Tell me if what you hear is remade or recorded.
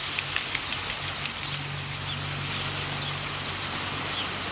recorded